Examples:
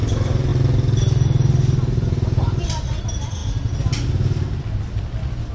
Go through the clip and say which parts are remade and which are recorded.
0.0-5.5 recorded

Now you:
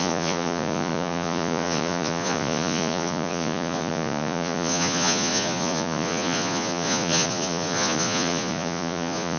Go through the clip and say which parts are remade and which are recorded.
0.0-9.4 remade

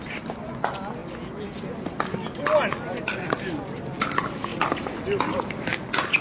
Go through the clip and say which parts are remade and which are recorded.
0.0-6.2 recorded

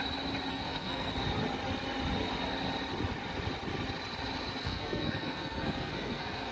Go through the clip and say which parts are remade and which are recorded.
0.0-0.5 recorded; 0.5-1.1 remade; 1.1-4.6 recorded; 4.6-6.5 remade

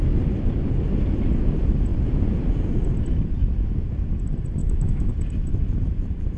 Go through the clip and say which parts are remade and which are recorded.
0.0-4.6 recorded; 4.6-5.1 remade; 5.1-6.4 recorded

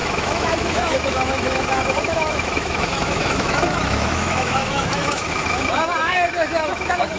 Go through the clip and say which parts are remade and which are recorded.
0.0-7.2 remade

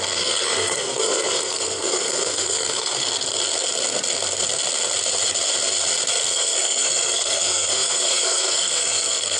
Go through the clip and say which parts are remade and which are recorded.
0.0-3.0 remade; 3.0-6.1 recorded; 6.1-9.4 remade

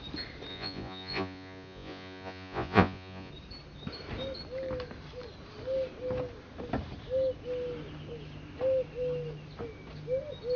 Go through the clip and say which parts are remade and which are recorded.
0.0-0.5 recorded; 0.5-3.3 remade; 3.3-10.6 recorded